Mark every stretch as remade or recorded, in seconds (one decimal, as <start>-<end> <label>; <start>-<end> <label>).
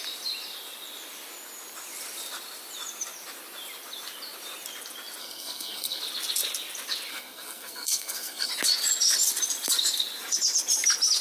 0.0-5.2 recorded; 5.2-6.0 remade; 6.0-7.1 recorded; 7.1-8.5 remade; 8.5-11.2 recorded